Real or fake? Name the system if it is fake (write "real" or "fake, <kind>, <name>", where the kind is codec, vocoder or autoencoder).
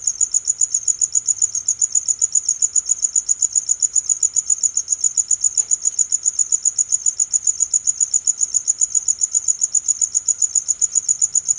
real